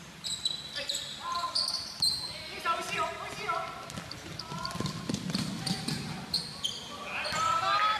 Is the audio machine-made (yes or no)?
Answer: no